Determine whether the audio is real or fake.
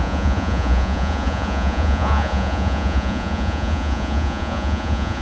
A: fake